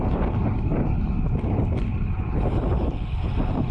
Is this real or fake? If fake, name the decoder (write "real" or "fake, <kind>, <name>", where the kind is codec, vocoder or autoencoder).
real